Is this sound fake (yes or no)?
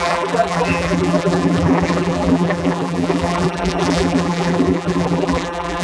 yes